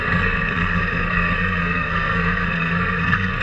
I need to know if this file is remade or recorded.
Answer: remade